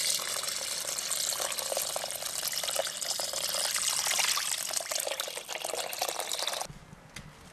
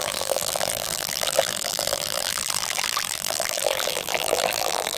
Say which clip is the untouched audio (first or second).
first